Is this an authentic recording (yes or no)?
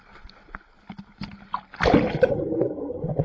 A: yes